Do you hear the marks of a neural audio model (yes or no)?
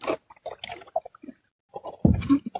no